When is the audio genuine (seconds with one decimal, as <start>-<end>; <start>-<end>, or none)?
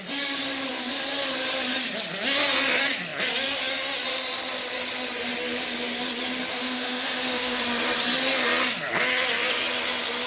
0.0-6.5; 7.6-10.3